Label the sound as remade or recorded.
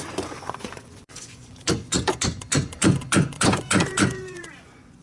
remade